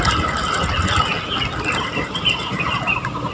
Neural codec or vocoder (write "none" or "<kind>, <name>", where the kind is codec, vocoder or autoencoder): none